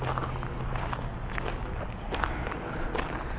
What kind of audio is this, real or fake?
real